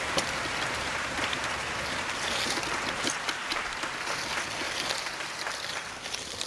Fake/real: real